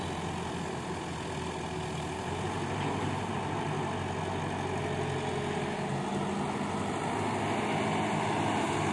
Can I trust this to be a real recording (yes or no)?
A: yes